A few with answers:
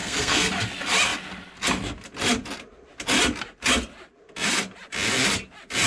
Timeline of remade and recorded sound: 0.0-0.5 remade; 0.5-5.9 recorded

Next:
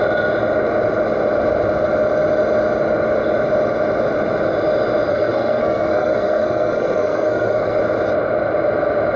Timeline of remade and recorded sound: 0.0-5.1 recorded; 5.1-7.8 remade; 7.8-9.2 recorded

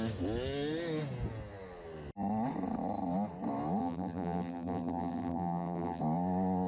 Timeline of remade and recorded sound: 0.0-3.8 recorded; 3.8-6.0 remade; 6.0-6.7 recorded

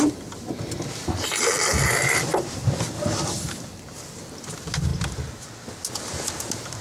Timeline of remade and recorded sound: 0.0-6.8 recorded

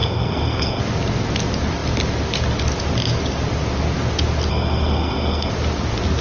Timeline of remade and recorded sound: 0.0-0.8 remade; 0.8-4.5 recorded; 4.5-5.5 remade; 5.5-6.2 recorded

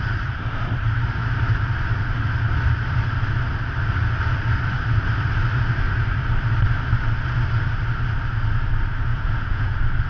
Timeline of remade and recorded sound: 0.0-9.1 recorded; 9.1-9.7 remade; 9.7-10.1 recorded

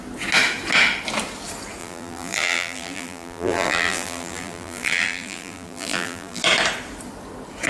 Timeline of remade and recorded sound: 0.0-1.8 recorded; 1.8-6.4 remade; 6.4-7.7 recorded

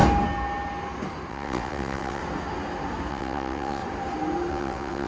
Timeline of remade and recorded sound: 0.0-1.3 recorded; 1.3-2.2 remade; 2.2-3.1 recorded; 3.1-3.8 remade; 3.8-4.5 recorded; 4.5-5.1 remade